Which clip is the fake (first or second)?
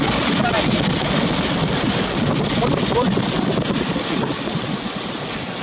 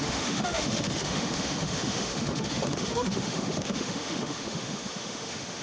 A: second